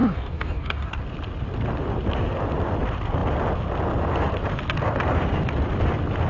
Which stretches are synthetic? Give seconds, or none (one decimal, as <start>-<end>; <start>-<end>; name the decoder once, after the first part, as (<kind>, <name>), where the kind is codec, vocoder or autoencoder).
0.0-1.0 (codec, DAC)